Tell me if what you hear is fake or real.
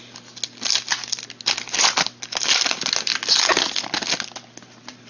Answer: real